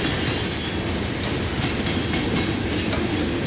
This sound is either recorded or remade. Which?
recorded